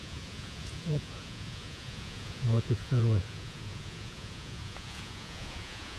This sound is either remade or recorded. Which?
remade